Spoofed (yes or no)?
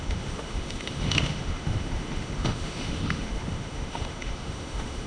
yes